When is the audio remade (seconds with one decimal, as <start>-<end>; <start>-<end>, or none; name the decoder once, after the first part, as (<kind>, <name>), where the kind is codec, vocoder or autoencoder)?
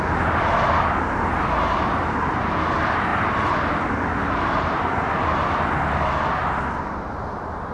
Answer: none